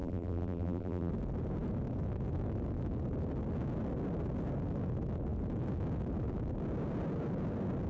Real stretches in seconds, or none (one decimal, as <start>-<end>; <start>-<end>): 1.1-7.9